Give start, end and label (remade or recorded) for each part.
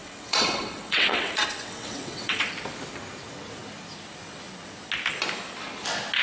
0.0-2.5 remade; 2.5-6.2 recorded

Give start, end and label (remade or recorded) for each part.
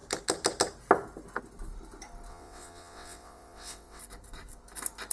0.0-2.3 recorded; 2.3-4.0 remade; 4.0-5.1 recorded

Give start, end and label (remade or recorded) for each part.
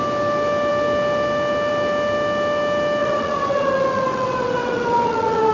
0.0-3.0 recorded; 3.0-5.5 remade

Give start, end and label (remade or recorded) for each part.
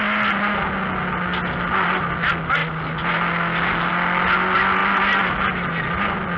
0.0-6.4 recorded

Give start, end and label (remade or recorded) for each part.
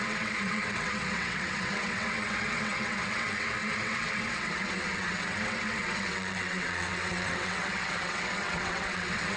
0.0-9.4 remade